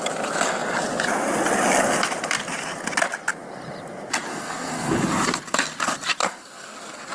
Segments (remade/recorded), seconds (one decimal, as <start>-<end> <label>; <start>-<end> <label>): 0.0-4.3 recorded; 4.3-4.9 remade; 4.9-6.2 recorded; 6.2-7.1 remade